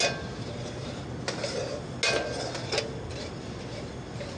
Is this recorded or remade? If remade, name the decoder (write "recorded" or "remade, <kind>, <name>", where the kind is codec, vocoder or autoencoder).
recorded